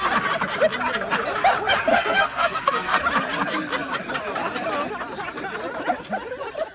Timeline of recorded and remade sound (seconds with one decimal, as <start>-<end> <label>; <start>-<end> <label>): 0.0-1.9 recorded; 1.9-3.0 remade; 3.0-6.7 recorded